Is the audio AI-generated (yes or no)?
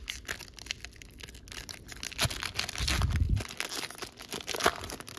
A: no